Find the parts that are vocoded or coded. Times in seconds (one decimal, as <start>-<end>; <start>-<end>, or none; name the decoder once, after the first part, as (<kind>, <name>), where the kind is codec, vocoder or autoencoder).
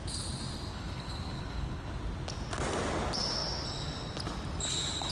0.7-1.9 (codec, HILCodec)